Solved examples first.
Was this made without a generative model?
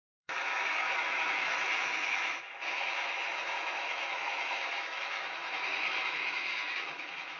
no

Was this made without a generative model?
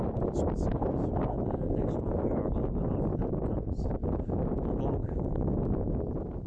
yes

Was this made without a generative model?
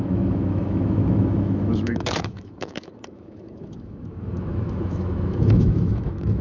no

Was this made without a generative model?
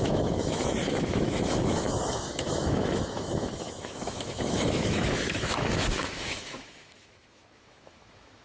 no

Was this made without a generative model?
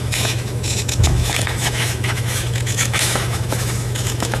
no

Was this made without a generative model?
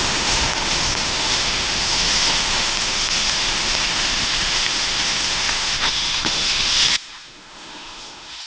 no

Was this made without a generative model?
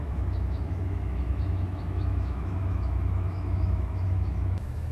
no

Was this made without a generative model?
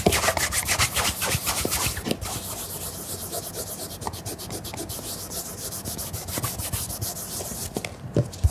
yes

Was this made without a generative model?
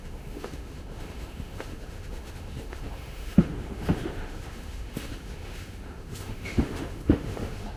no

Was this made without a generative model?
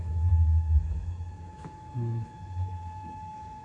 no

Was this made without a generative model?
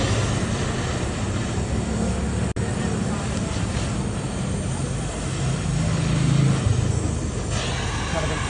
yes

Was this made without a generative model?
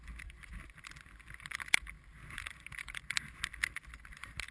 yes